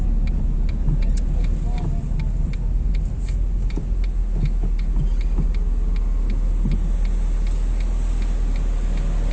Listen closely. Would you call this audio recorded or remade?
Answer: recorded